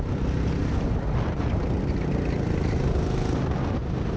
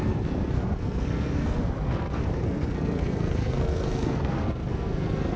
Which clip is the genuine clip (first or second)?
first